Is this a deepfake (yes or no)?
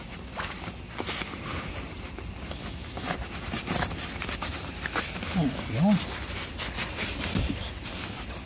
no